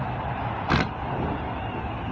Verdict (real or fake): fake